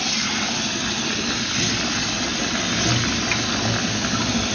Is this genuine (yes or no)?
yes